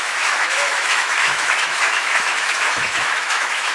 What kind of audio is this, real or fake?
fake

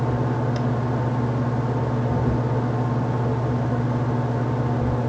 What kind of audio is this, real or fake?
real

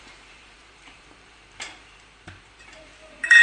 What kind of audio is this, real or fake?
fake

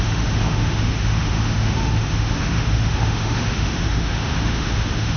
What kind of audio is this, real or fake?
fake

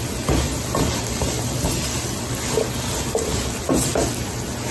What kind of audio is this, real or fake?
real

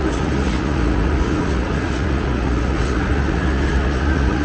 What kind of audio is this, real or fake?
fake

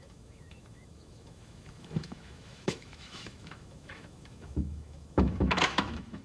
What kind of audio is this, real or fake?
fake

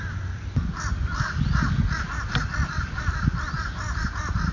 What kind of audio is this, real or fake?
real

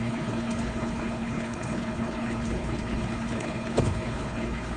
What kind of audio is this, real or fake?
fake